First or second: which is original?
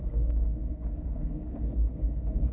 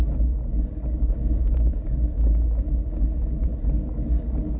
second